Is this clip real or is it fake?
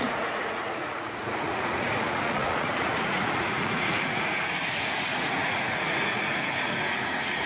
fake